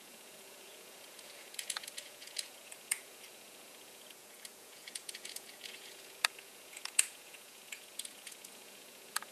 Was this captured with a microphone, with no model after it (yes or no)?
no